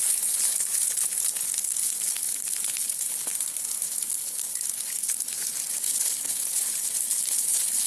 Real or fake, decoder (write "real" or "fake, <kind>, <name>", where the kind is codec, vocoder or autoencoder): fake, codec, HILCodec